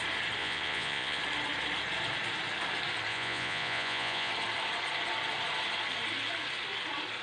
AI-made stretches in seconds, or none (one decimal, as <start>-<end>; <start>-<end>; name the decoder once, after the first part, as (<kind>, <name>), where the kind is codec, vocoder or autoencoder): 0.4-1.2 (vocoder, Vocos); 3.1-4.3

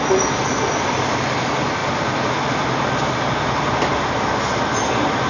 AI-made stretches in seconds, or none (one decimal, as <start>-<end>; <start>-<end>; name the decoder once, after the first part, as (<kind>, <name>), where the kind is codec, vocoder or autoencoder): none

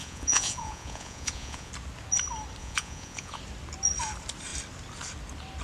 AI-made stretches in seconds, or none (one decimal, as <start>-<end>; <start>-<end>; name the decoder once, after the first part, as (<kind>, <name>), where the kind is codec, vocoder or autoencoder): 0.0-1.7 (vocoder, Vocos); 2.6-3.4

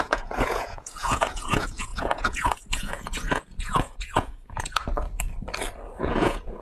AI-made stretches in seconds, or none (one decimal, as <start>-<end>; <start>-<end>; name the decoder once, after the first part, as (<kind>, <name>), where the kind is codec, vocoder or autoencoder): 0.0-4.8 (vocoder, Vocos); 6.0-6.6

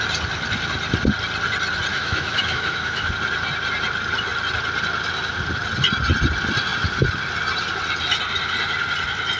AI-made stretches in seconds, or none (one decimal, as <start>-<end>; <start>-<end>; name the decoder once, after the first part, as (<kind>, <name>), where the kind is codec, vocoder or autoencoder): 1.9-3.1 (autoencoder, DAC-VAE)

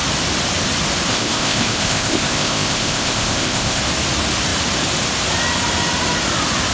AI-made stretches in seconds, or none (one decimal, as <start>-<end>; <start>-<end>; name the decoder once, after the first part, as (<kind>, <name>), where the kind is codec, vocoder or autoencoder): 1.1-3.8 (codec, ZipCodec)

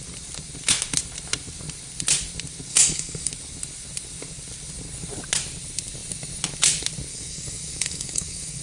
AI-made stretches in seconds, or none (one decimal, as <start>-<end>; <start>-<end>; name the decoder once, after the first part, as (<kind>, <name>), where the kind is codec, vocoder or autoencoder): 2.7-3.3 (codec, DAC); 7.1-8.6